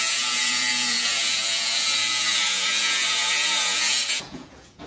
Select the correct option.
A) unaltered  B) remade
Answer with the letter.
B